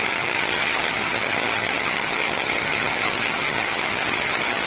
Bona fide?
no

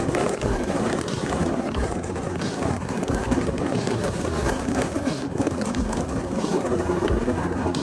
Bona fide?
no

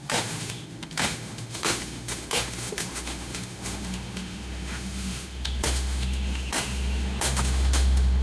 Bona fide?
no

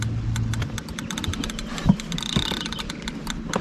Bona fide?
yes